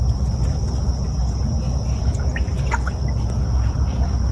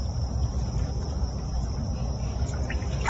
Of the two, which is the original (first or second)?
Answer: first